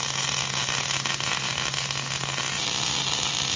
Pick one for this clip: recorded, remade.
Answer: recorded